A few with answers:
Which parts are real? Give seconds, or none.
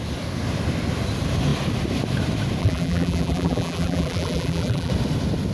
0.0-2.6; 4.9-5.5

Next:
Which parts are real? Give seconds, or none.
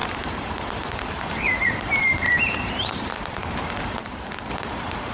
4.0-4.5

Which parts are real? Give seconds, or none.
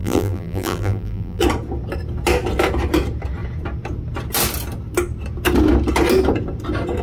1.4-7.0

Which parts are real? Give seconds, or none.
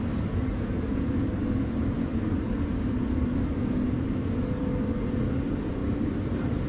0.0-5.8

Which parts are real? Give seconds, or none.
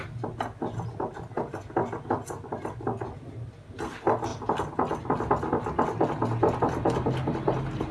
0.0-4.3; 5.3-7.9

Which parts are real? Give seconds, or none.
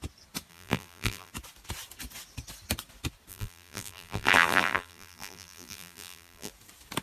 0.0-0.5; 1.3-3.3; 6.5-7.0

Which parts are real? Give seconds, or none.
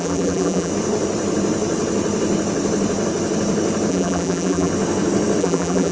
0.7-3.9; 4.7-5.4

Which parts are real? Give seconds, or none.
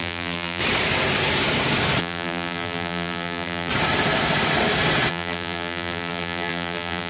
0.6-2.0; 3.7-5.1